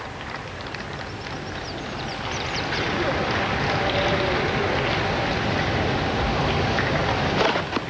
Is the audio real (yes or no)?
yes